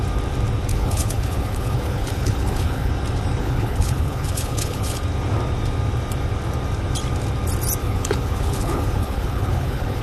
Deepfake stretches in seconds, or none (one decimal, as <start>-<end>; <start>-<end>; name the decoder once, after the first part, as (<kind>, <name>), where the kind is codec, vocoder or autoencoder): 0.7-2.9 (codec, HILCodec); 3.4-5.0; 7.8-10.0